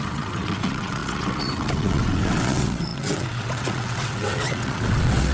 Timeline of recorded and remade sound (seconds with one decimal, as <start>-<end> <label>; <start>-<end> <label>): 0.0-5.3 remade